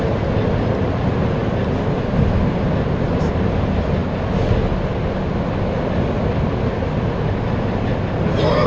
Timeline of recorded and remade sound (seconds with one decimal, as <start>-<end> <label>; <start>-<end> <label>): 0.0-8.7 recorded